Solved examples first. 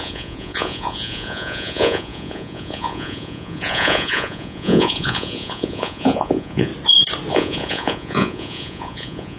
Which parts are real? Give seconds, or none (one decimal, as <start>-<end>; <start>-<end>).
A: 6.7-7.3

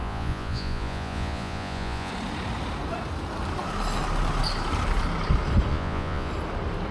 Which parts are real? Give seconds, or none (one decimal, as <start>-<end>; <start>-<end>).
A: 2.1-5.7; 6.3-6.9

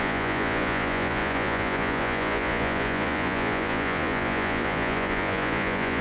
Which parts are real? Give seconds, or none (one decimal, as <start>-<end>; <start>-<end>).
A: none

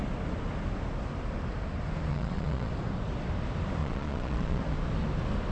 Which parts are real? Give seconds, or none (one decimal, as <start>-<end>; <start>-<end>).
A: 0.0-2.1; 2.7-3.8; 4.6-5.5

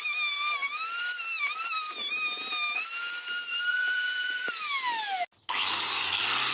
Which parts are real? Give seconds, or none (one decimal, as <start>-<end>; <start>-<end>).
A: 0.0-3.7; 4.5-6.5

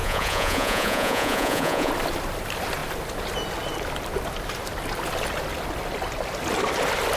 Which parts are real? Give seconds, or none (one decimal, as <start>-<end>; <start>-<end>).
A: 1.9-7.2